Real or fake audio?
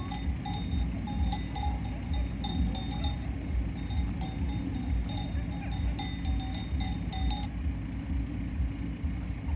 real